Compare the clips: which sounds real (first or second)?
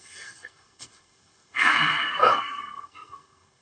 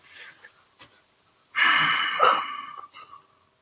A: second